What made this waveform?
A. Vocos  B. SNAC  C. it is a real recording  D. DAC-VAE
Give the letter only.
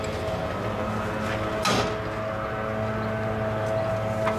C